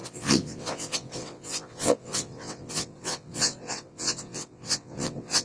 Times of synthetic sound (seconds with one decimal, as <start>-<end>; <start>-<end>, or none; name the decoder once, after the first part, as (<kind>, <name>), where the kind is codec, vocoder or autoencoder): 0.0-5.4 (vocoder, WaveNeXt)